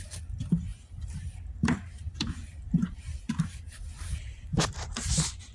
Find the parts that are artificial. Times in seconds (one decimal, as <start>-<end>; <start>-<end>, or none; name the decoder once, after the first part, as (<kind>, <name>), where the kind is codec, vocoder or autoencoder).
0.7-4.0 (vocoder, BigVGAN v2); 4.5-5.1